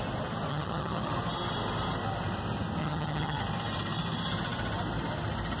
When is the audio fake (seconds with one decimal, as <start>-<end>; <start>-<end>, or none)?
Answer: 0.5-1.1; 2.8-3.4